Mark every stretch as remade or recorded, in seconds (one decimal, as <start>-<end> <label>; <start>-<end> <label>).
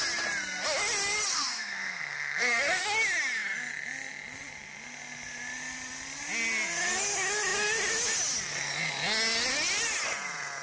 0.0-1.3 recorded; 1.3-2.8 remade; 2.8-10.6 recorded